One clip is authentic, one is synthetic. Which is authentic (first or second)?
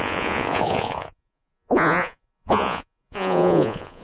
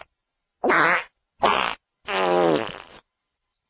second